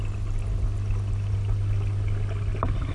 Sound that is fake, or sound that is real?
real